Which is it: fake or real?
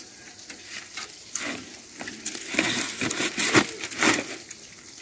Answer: real